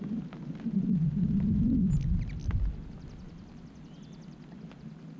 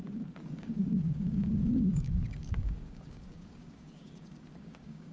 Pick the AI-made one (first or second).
second